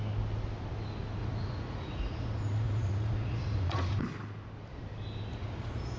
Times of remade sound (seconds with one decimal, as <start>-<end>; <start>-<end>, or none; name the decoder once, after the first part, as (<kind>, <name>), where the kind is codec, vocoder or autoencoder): 1.2-4.0 (vocoder, Vocos); 5.3-6.0